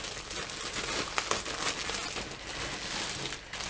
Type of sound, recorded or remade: recorded